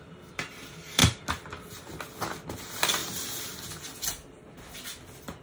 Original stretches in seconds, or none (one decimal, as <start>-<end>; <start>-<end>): 0.0-5.4